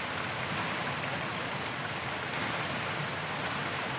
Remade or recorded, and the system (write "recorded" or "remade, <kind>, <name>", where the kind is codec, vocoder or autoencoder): recorded